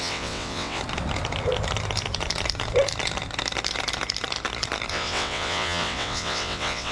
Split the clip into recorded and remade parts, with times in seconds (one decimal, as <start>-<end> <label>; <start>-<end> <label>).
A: 0.0-0.8 remade; 0.8-4.9 recorded; 4.9-6.9 remade